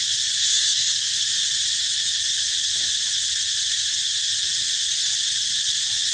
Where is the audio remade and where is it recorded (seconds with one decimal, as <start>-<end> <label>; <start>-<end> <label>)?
0.0-0.5 recorded; 0.5-1.1 remade; 1.1-6.1 recorded